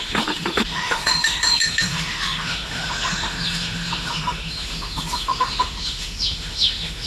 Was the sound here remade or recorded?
remade